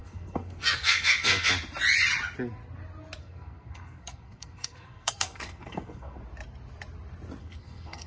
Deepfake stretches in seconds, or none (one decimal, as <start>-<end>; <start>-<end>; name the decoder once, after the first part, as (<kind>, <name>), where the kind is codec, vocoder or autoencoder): 0.0-1.5 (codec, SNAC); 3.2-6.2; 7.4-8.1